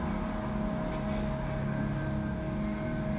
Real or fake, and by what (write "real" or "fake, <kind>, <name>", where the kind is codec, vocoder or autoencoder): real